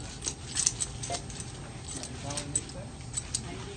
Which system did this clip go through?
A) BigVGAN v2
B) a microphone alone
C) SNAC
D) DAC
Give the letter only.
B